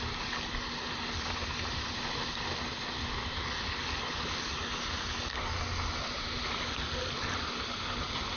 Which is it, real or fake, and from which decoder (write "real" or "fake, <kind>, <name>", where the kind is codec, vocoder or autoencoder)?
real